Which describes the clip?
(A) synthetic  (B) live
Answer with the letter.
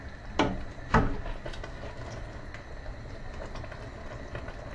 B